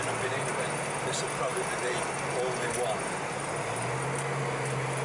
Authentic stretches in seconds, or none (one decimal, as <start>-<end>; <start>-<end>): 0.0-5.0